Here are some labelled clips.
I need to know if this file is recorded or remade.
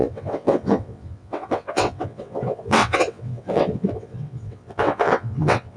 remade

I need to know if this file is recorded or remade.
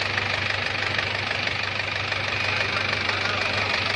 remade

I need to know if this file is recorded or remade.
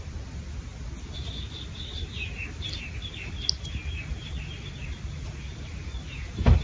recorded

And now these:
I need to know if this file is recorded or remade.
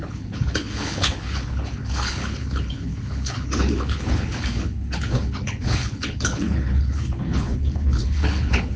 remade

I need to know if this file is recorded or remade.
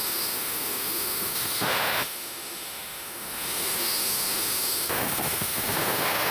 remade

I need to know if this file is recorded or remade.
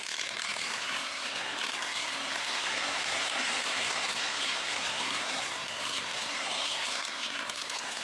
remade